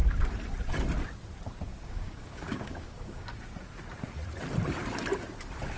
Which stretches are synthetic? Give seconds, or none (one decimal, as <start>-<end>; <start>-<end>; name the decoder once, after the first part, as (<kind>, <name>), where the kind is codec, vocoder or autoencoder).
1.7-3.4 (codec, DAC)